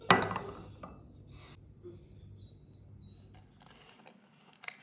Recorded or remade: recorded